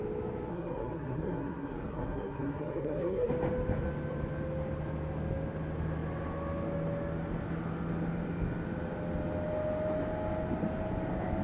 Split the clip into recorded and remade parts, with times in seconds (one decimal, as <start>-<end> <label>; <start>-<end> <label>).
0.0-0.5 recorded; 0.5-3.3 remade; 3.3-11.4 recorded